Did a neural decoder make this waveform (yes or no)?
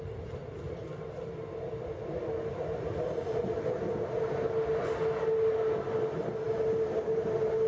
no